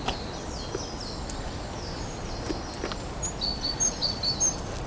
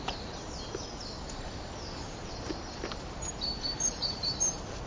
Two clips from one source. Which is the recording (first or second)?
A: first